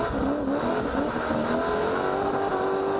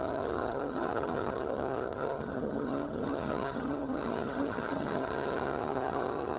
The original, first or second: first